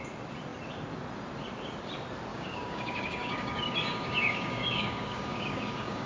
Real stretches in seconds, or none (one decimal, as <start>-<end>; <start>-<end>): 0.0-2.3